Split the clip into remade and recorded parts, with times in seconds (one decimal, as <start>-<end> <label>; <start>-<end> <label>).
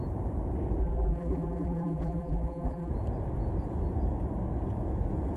0.0-0.8 recorded; 0.8-2.9 remade; 2.9-5.4 recorded